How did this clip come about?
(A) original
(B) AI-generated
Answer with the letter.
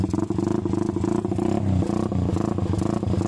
A